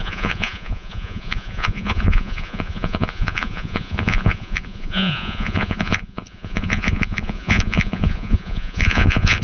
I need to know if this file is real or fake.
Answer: fake